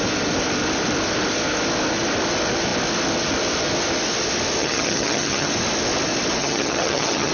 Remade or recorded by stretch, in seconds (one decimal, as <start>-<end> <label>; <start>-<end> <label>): 0.0-4.6 recorded; 4.6-5.5 remade; 5.5-6.4 recorded; 6.4-7.3 remade